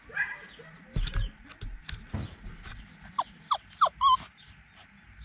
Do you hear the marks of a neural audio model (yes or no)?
no